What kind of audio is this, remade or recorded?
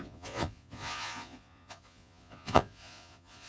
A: remade